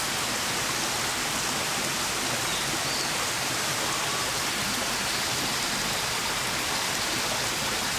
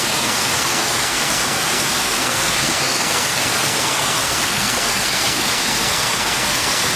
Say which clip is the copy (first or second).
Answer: second